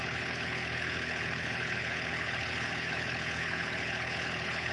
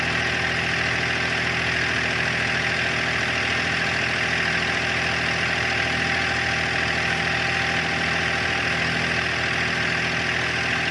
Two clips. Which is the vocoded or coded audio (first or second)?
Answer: first